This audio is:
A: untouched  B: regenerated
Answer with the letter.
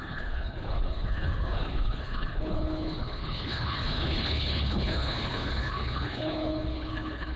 B